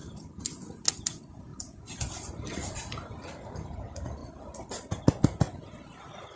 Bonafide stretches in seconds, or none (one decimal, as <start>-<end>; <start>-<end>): 0.0-0.9; 4.2-6.0